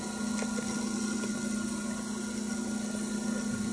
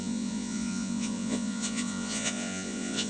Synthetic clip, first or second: second